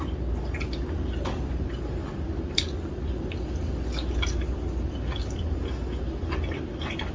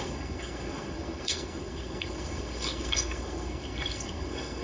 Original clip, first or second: first